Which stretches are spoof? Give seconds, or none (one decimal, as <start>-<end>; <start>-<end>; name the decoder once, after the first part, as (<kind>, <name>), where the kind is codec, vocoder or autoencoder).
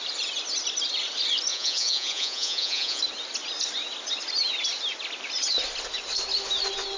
1.5-3.0 (vocoder, Vocos)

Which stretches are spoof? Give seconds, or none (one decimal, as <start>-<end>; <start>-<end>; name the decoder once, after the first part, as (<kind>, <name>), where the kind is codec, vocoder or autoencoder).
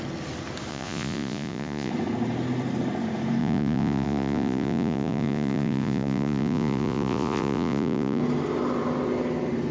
0.7-1.9 (vocoder, Vocos); 3.4-8.2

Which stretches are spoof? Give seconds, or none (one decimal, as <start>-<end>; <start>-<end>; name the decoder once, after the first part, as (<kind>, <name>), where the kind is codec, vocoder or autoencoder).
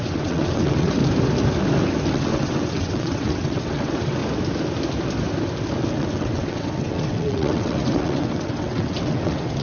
0.0-1.0 (vocoder, WaveNeXt); 2.1-4.2; 5.9-9.6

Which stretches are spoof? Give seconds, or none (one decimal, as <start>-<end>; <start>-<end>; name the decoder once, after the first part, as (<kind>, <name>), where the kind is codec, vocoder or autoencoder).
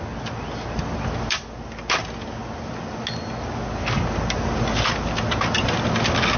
none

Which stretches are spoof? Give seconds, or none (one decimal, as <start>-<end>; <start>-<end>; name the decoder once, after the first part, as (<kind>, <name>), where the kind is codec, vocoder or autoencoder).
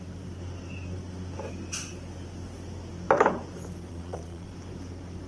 3.9-4.5 (vocoder, Vocos)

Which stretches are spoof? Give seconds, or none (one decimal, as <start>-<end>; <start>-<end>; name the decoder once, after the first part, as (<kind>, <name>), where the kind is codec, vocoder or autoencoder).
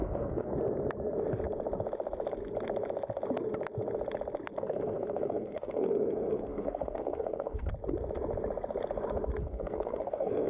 0.0-0.5 (codec, SNAC); 4.6-7.7; 9.4-10.5